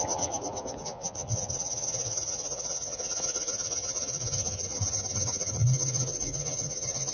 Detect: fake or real fake